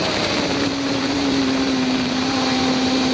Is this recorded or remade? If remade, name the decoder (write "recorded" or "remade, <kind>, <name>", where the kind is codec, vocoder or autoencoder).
remade, vocoder, BigVGAN v2